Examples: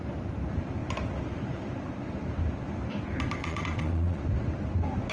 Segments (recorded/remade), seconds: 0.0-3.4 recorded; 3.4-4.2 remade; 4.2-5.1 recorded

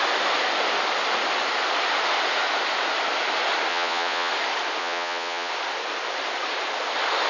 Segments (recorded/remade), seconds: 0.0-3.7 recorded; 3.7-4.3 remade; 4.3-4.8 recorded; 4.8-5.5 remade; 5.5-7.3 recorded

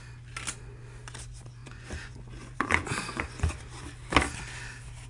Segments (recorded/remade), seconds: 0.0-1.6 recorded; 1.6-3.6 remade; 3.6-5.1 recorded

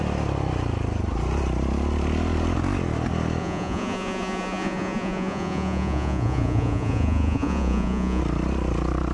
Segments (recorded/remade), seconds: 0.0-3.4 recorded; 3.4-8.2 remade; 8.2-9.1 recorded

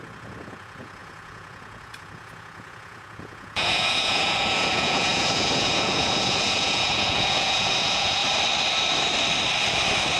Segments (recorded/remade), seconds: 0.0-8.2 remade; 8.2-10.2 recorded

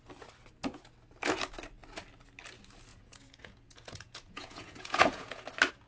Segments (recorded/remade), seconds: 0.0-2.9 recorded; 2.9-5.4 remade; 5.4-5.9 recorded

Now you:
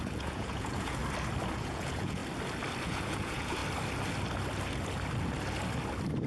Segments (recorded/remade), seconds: 0.0-1.0 remade; 1.0-1.5 recorded; 1.5-2.2 remade; 2.2-2.8 recorded; 2.8-3.6 remade; 3.6-6.3 recorded